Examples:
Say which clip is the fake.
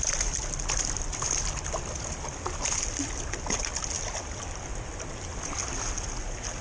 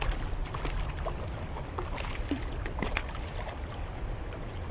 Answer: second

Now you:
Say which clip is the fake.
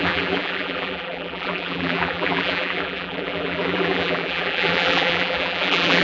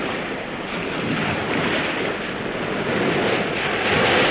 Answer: first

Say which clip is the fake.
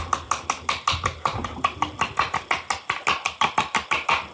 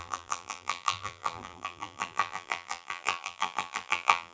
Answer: second